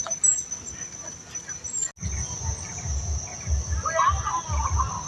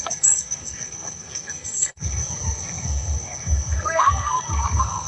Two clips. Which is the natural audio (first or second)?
first